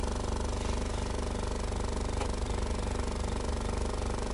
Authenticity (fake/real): real